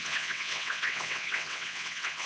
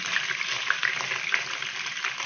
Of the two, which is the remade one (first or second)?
first